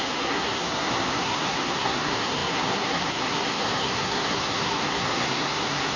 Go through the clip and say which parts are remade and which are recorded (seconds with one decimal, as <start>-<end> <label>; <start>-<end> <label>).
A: 0.0-6.0 remade